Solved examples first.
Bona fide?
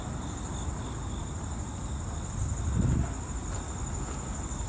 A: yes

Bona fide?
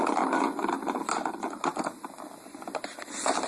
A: yes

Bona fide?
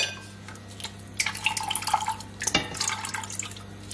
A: yes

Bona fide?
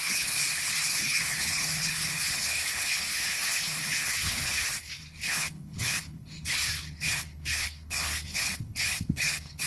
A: no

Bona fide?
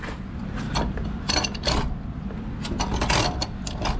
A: yes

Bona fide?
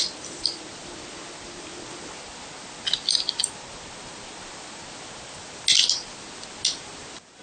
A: yes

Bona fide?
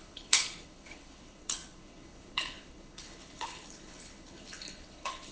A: no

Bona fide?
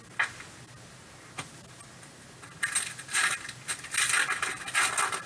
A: yes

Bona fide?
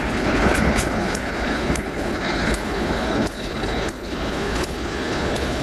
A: no